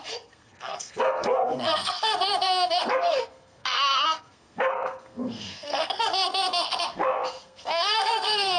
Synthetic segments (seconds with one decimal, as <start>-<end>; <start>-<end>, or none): 0.0-8.6